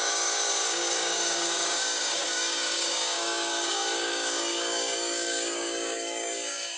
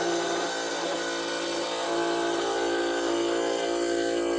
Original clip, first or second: second